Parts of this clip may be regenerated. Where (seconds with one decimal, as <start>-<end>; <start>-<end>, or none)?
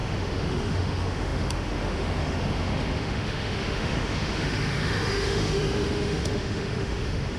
0.0-7.4